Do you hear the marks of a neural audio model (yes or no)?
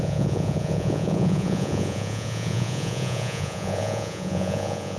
yes